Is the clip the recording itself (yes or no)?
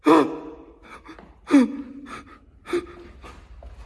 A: yes